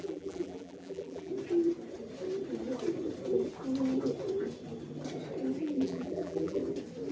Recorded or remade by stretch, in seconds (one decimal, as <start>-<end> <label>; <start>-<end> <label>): 0.0-1.3 remade; 1.3-5.6 recorded; 5.6-6.6 remade; 6.6-7.1 recorded